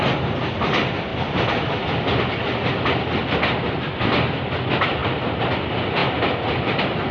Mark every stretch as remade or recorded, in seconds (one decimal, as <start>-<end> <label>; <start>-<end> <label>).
0.0-5.0 recorded; 5.0-5.5 remade; 5.5-7.1 recorded